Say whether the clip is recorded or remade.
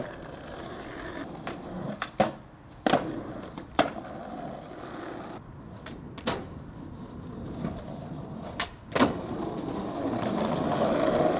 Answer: recorded